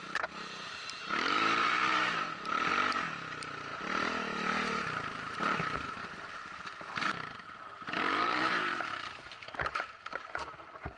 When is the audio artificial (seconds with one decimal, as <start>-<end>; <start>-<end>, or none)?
0.0-3.7; 5.4-6.0; 8.0-11.0